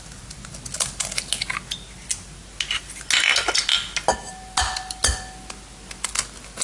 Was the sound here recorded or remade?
recorded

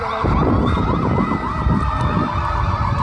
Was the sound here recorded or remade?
remade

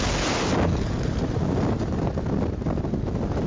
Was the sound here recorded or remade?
recorded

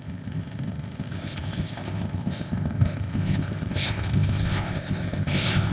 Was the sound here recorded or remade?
remade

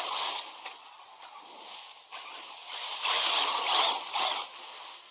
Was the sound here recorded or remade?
recorded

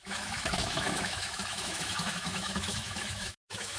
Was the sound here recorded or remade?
remade